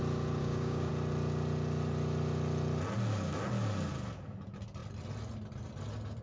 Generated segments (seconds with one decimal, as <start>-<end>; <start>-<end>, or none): 0.4-0.9